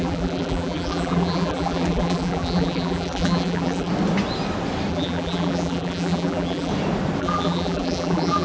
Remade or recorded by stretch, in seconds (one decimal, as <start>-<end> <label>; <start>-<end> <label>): 0.0-3.9 remade; 3.9-4.9 recorded; 4.9-6.7 remade; 6.7-7.2 recorded; 7.2-8.4 remade